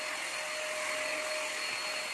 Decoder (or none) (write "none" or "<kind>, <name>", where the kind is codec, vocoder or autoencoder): none